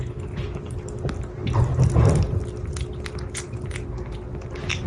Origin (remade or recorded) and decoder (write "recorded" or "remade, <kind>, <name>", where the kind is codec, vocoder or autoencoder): recorded